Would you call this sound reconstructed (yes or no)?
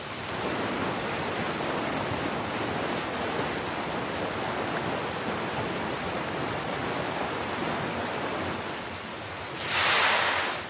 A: no